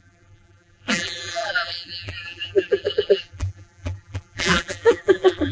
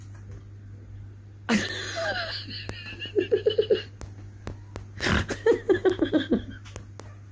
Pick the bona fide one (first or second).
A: second